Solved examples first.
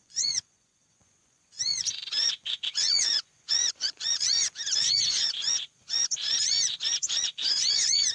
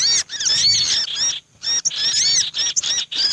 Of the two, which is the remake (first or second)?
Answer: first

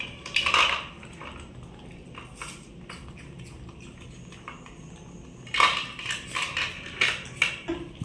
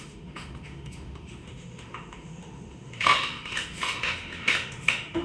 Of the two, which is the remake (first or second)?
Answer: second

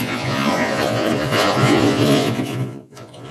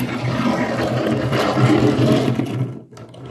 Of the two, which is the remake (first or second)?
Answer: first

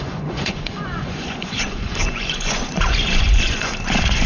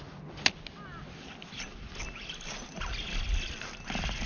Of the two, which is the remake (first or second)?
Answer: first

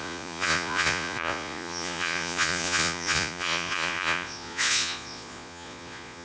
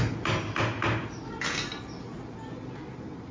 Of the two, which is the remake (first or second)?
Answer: first